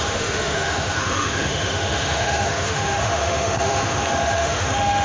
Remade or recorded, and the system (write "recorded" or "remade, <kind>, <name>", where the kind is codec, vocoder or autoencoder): remade, autoencoder, DAC-VAE